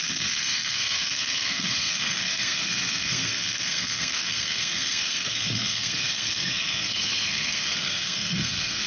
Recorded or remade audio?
remade